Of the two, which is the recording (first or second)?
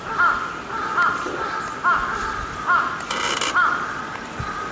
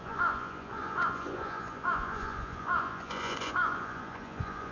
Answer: first